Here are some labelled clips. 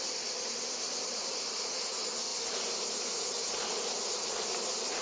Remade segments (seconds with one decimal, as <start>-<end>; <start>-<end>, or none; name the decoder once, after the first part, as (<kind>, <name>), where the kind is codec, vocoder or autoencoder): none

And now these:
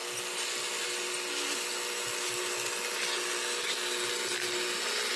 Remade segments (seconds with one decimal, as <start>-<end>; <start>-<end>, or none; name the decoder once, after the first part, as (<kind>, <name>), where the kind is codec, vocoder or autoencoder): none

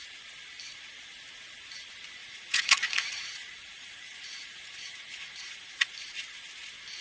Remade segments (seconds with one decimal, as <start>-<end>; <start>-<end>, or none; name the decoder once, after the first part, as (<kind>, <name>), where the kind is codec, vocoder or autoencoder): 2.2-5.9 (vocoder, Vocos)

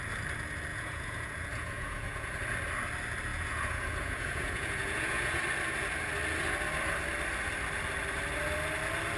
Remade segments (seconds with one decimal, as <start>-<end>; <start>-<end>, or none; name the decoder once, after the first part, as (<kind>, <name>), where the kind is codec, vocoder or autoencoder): 0.7-2.4 (vocoder, Vocos); 3.3-5.4